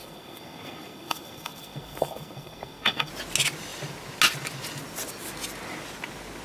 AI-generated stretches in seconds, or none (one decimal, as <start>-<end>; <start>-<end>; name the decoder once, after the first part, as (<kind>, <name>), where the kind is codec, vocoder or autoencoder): 0.0-3.1 (codec, SNAC)

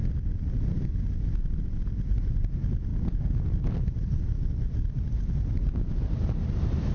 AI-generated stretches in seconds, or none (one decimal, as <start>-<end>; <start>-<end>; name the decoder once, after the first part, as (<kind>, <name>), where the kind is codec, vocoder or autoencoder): none

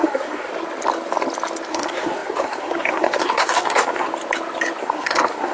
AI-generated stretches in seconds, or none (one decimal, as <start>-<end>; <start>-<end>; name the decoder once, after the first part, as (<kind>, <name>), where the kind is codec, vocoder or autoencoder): 0.0-0.5 (codec, SNAC); 1.7-4.1; 4.8-5.5

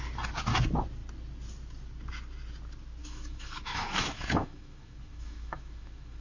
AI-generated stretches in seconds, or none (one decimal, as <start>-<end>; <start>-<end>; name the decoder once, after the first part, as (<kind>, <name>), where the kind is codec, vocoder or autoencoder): 3.0-6.2 (autoencoder, DAC-VAE)

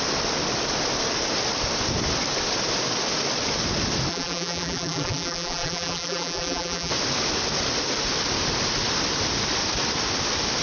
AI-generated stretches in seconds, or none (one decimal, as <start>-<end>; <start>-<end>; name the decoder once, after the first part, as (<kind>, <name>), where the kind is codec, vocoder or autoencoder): 4.1-6.9 (vocoder, BigVGAN v2)

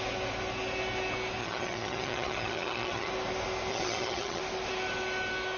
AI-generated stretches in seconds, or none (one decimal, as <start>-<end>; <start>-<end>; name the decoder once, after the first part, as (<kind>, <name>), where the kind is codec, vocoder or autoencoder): 1.4-3.1 (vocoder, HiFi-GAN); 3.7-4.4

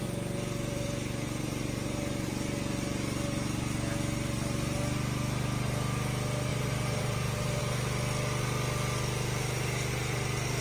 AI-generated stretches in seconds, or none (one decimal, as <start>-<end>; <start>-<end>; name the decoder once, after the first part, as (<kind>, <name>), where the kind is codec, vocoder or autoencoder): 0.0-2.3 (vocoder, BigVGAN v2); 6.5-7.6